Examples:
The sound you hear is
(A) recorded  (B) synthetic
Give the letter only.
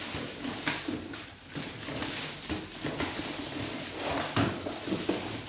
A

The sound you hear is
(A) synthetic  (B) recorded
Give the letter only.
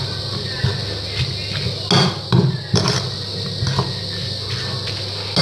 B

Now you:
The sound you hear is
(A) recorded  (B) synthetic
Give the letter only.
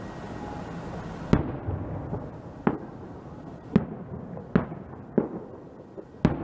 A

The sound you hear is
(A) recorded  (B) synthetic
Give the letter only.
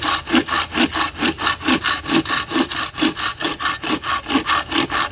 A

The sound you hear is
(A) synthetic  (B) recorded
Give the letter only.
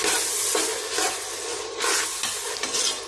B